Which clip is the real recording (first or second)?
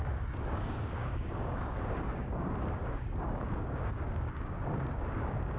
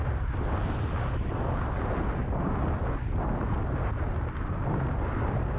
second